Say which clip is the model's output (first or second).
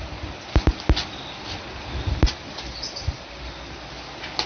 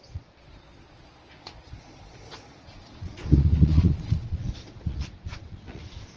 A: second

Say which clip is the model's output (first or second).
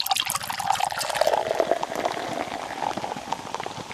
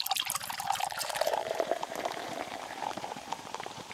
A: second